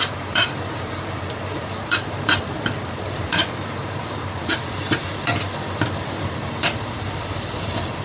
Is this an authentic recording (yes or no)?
no